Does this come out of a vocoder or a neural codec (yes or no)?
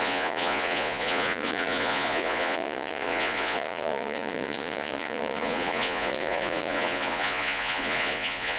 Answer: yes